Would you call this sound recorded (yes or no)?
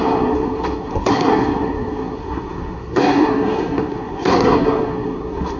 no